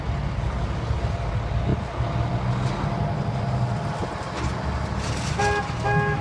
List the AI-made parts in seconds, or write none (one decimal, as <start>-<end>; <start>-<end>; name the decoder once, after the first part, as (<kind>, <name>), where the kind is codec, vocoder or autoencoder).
none

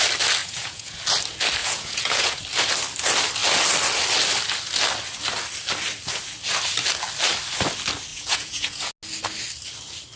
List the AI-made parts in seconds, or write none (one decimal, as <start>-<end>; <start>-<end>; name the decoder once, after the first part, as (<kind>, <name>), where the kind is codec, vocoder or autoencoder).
0.4-1.0 (vocoder, Vocos); 1.6-2.4; 8.1-8.9